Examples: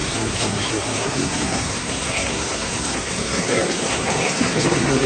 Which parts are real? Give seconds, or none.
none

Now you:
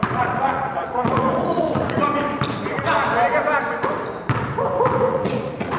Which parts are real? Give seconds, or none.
2.1-5.1

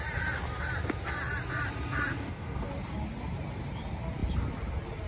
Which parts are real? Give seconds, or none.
0.0-2.1; 2.7-5.1

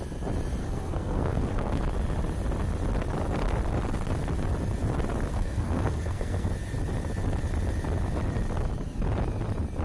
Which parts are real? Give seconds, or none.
0.0-0.6; 1.8-5.3; 6.5-9.8

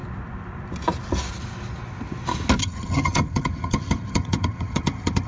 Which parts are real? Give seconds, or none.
0.0-2.6